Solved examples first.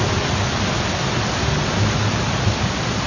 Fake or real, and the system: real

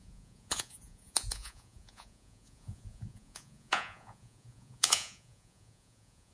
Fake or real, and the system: fake, vocoder, Vocos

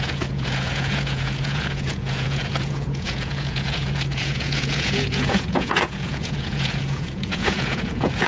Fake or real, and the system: fake, vocoder, Vocos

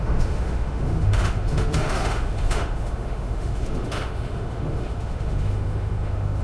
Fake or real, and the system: fake, autoencoder, DAC-VAE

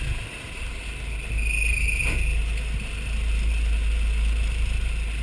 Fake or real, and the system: real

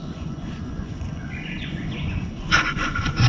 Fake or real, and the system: fake, vocoder, Vocos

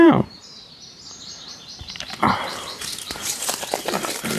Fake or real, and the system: fake, vocoder, BigVGAN v2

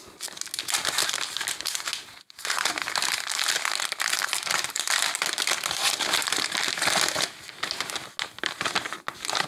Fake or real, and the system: real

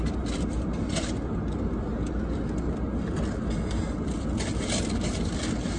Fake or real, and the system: real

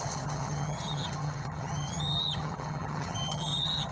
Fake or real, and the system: fake, vocoder, HiFi-GAN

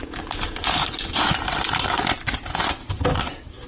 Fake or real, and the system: real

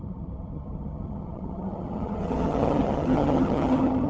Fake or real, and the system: fake, vocoder, HiFi-GAN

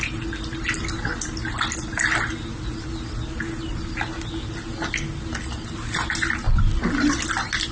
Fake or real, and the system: real